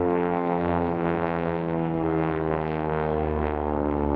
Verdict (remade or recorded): remade